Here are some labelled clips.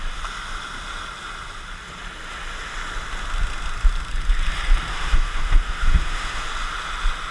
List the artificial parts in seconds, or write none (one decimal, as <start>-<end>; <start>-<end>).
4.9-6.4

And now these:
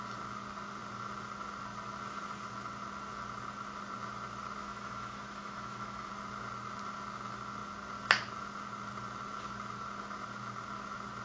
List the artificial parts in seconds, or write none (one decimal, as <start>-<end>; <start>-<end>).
4.6-6.1

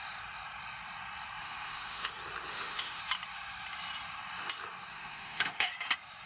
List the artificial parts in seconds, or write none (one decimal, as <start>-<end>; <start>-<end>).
1.4-2.1; 2.5-3.0; 4.9-5.7